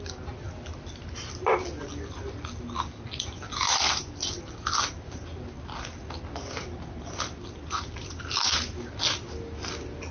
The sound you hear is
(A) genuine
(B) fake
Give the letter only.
A